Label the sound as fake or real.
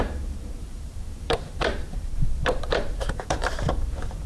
fake